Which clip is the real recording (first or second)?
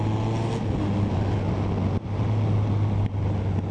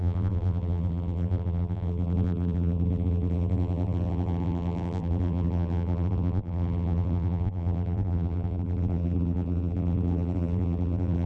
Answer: first